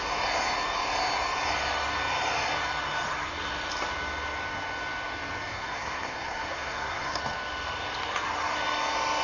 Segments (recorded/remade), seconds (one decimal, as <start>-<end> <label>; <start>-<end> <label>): 0.0-5.5 recorded; 5.5-7.2 remade; 7.2-9.2 recorded